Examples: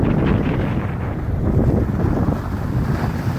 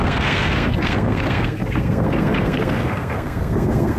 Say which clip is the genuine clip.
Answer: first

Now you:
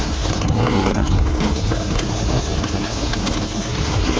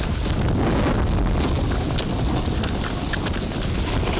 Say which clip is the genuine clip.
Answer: second